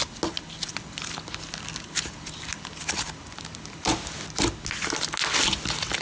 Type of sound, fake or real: real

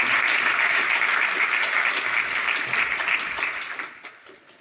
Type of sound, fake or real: real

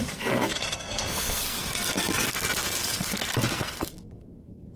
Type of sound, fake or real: fake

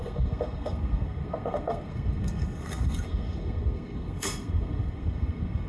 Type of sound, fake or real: fake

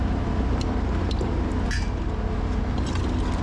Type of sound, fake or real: real